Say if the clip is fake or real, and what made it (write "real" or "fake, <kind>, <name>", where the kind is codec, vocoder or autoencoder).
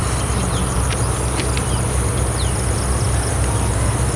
real